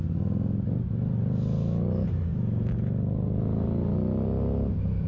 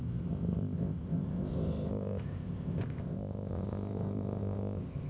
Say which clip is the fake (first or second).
second